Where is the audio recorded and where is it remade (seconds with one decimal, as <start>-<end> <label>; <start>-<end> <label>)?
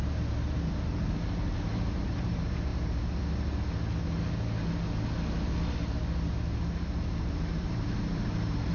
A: 0.0-2.7 remade; 2.7-7.0 recorded; 7.0-8.7 remade